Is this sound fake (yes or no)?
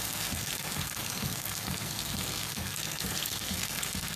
yes